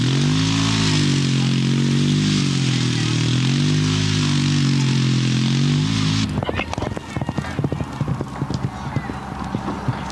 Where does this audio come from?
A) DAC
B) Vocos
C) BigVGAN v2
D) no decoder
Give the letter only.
D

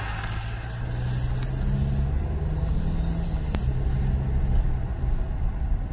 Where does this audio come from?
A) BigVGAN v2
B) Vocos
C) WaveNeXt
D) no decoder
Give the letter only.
D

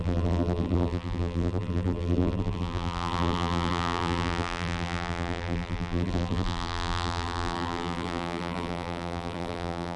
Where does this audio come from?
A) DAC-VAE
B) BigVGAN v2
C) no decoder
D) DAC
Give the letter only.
B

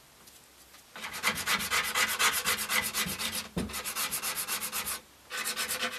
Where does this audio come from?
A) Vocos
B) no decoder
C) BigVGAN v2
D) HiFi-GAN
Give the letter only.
B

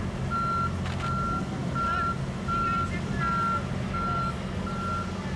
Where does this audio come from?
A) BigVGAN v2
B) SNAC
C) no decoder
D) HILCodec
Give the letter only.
C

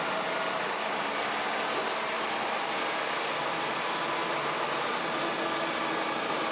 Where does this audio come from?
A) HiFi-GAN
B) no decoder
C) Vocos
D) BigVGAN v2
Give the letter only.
B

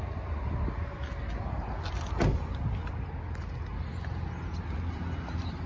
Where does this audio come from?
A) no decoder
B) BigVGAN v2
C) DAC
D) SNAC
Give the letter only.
A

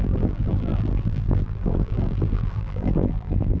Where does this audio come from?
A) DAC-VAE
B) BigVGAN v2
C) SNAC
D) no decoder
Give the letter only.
B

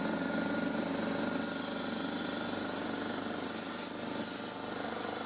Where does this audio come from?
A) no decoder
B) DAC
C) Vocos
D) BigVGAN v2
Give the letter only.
A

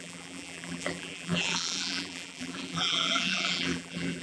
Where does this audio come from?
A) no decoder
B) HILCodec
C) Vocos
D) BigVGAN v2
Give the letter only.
D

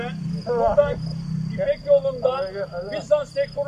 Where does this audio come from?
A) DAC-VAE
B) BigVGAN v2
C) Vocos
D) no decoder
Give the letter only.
B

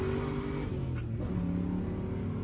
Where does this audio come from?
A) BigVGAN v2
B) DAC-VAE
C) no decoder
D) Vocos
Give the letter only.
C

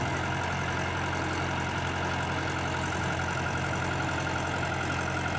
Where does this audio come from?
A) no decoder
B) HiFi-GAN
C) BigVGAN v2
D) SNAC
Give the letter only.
A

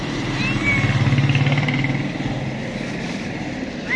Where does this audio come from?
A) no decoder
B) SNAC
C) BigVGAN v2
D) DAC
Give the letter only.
A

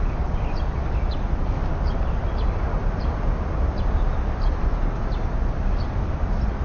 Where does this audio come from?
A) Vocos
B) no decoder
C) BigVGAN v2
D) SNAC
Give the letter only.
B